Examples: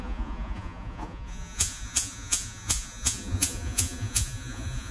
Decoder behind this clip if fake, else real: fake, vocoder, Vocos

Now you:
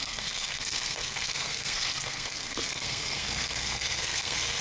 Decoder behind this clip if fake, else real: fake, codec, SNAC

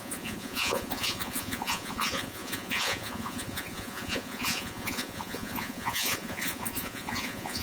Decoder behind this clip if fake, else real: fake, vocoder, Vocos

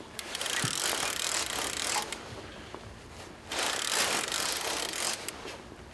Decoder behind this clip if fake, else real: real